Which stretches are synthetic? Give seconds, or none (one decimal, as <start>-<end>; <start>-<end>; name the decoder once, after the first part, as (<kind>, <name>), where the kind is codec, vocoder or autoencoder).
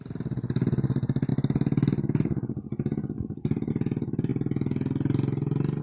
none